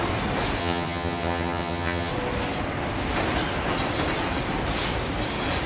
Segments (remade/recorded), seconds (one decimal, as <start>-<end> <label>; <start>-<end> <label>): 0.0-0.6 recorded; 0.6-2.1 remade; 2.1-5.7 recorded